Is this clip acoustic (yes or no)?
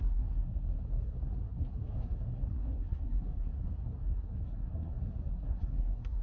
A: no